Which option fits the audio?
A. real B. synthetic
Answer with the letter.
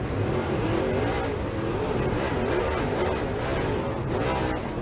A